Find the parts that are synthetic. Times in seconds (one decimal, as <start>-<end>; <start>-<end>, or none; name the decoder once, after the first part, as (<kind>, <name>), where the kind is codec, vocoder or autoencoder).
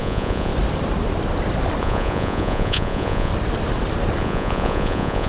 0.0-0.5 (vocoder, Vocos); 1.8-3.3; 4.2-5.3